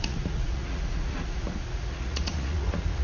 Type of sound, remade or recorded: remade